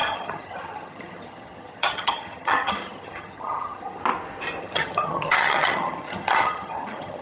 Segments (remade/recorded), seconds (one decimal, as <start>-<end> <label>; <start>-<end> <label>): 0.0-4.0 remade; 4.0-4.6 recorded; 4.6-7.2 remade